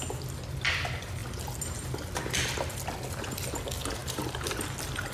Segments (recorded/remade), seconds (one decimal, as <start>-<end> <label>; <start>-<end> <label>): 0.0-4.0 recorded; 4.0-5.1 remade